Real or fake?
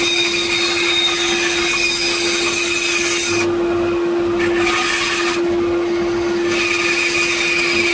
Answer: real